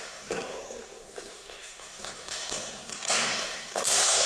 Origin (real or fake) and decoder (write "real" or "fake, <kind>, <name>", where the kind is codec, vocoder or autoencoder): fake, codec, SNAC